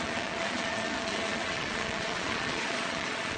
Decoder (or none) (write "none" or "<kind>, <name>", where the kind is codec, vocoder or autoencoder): vocoder, Vocos